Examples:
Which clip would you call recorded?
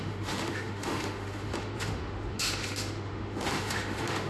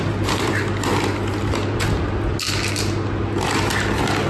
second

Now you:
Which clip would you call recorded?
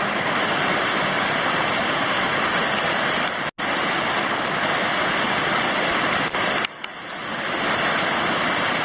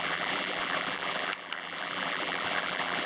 first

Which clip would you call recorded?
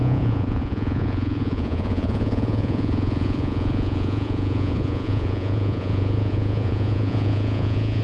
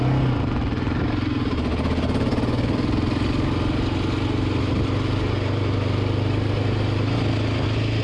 second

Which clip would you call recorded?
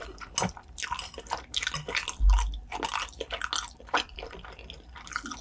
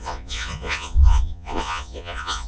first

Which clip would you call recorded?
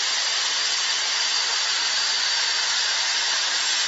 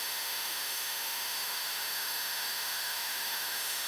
first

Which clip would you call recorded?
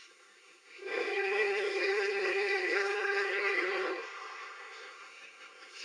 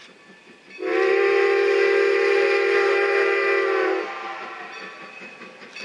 second